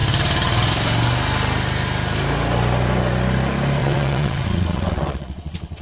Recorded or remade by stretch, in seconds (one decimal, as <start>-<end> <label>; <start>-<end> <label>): 0.0-3.8 recorded; 3.8-5.8 remade